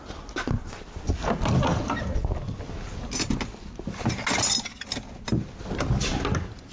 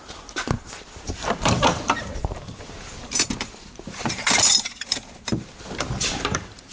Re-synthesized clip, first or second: second